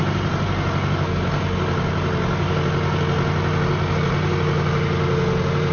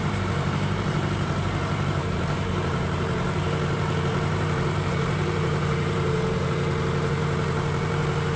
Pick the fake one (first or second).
second